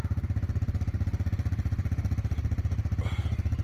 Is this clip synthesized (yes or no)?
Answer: no